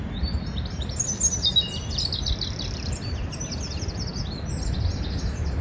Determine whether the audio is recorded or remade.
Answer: recorded